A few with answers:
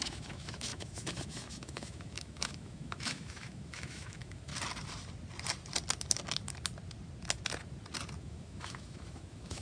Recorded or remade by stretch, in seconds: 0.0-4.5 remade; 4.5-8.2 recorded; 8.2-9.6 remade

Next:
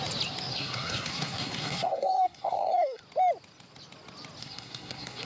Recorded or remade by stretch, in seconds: 0.0-0.5 recorded; 0.5-3.0 remade; 3.0-4.4 recorded; 4.4-5.3 remade

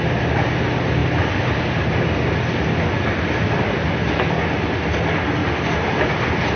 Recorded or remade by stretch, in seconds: 0.0-6.6 recorded

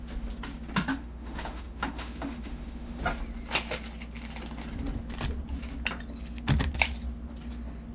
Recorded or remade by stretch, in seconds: 0.0-0.9 recorded; 0.9-3.0 remade; 3.0-7.9 recorded

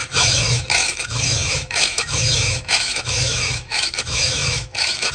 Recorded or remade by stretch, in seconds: 0.0-5.1 remade

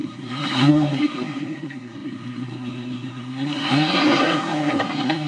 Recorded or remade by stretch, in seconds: 0.0-5.3 remade